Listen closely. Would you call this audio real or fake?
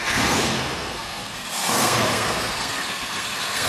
fake